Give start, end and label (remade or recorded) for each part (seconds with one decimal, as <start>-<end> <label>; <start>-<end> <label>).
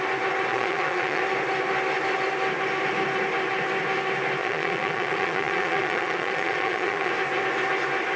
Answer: 0.0-0.5 recorded; 0.5-1.2 remade; 1.2-4.4 recorded; 4.4-7.1 remade; 7.1-8.2 recorded